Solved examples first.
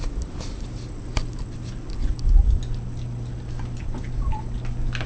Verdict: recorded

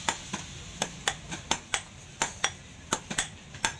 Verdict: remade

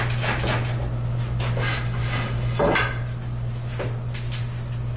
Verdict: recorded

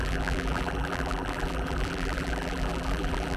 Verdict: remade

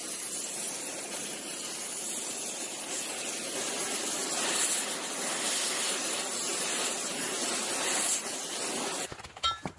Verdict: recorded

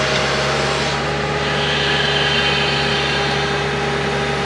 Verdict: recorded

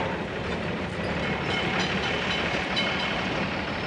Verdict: recorded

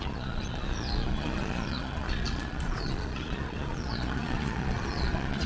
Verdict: remade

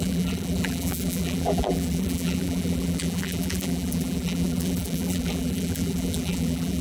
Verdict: remade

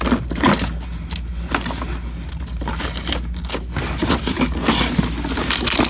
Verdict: recorded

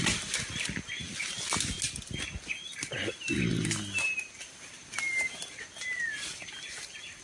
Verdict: recorded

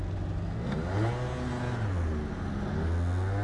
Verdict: recorded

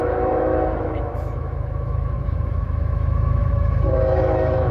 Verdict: remade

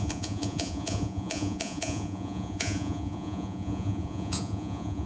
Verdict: remade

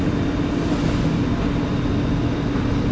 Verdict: recorded